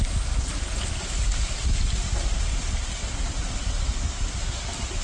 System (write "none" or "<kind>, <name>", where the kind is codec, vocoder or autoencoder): none